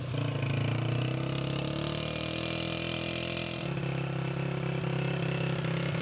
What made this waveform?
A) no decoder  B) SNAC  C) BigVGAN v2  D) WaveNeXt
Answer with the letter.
A